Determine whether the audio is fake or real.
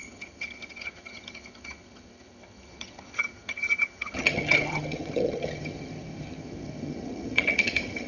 fake